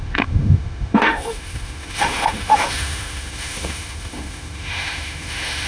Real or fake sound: fake